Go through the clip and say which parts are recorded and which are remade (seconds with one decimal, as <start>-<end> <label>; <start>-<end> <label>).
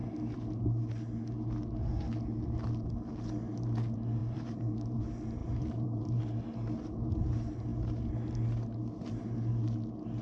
0.0-4.2 recorded; 4.2-5.0 remade; 5.0-5.4 recorded; 5.4-6.2 remade; 6.2-10.2 recorded